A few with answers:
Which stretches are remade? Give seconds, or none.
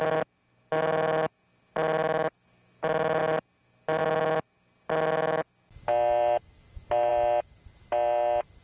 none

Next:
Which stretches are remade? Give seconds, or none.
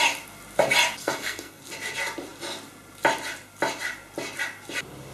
1.0-1.6 (codec, SNAC)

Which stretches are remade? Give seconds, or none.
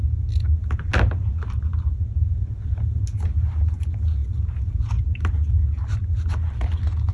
none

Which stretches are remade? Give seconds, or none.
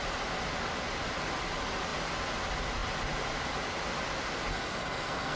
4.5-5.4 (codec, SNAC)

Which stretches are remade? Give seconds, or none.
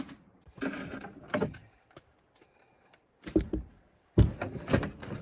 none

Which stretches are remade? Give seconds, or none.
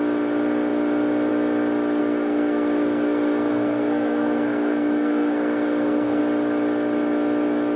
2.0-6.2 (codec, SNAC)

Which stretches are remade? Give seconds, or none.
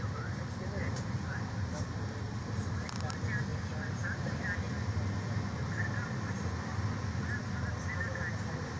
none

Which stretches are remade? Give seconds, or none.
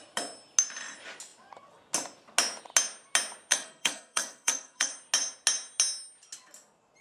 3.5-4.9 (codec, SNAC)